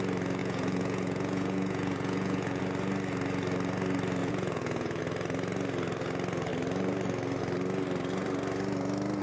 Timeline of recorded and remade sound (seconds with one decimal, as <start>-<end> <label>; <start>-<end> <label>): 0.0-0.4 recorded; 0.4-2.6 remade; 2.6-4.2 recorded; 4.2-5.0 remade; 5.0-9.2 recorded